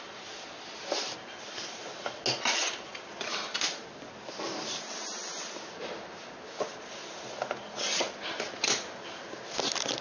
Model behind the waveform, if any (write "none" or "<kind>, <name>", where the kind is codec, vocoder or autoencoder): none